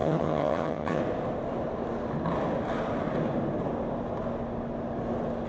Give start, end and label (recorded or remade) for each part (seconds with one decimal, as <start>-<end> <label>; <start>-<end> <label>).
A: 0.0-1.0 remade; 1.0-5.5 recorded